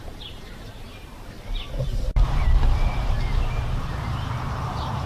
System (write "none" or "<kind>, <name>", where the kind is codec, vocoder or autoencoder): vocoder, BigVGAN v2